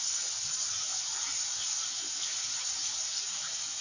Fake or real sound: fake